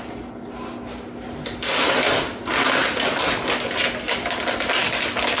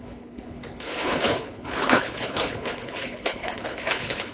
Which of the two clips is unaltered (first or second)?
first